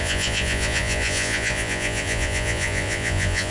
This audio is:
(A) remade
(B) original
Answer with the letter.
A